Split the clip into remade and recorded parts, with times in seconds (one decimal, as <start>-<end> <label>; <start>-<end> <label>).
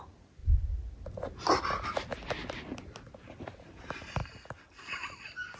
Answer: 0.0-5.6 recorded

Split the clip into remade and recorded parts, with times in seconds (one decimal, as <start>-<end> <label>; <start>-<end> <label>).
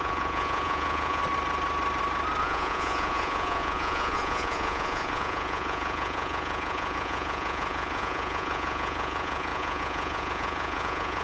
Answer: 0.0-1.2 remade; 1.2-2.4 recorded; 2.4-11.2 remade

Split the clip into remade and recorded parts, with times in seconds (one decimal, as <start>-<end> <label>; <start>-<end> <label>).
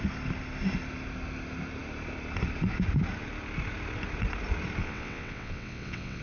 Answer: 0.0-4.8 recorded; 4.8-6.2 remade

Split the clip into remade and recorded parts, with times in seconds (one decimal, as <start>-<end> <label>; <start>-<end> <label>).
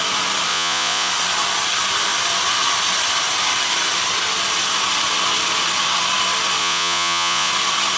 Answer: 0.0-0.5 recorded; 0.5-1.1 remade; 1.1-6.6 recorded; 6.6-7.5 remade; 7.5-8.0 recorded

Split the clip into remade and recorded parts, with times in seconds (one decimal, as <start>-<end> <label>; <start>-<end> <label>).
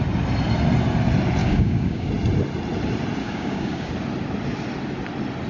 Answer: 0.0-1.4 recorded; 1.4-2.1 remade; 2.1-3.2 recorded; 3.2-3.9 remade; 3.9-5.5 recorded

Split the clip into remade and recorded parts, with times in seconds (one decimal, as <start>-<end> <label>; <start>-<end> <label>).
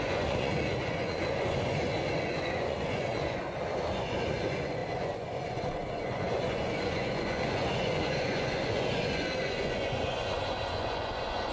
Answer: 0.0-11.5 remade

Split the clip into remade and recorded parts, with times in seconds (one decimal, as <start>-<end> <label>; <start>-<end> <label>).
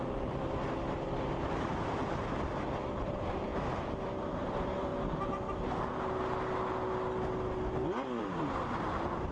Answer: 0.0-2.0 remade; 2.0-3.1 recorded; 3.1-3.5 remade; 3.5-4.4 recorded; 4.4-4.9 remade; 4.9-8.2 recorded; 8.2-9.3 remade